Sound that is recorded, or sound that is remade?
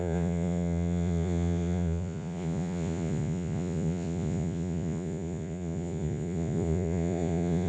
remade